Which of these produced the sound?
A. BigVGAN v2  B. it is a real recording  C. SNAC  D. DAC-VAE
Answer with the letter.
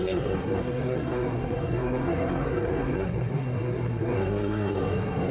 C